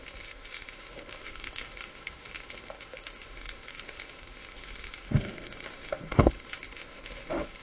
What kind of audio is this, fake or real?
fake